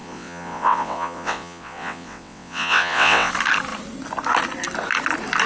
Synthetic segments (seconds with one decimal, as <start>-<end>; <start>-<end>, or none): 0.0-3.3